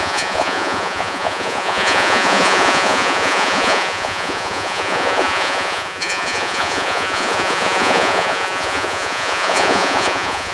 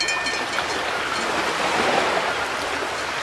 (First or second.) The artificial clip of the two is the first